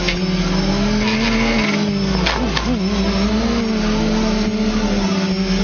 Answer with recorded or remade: recorded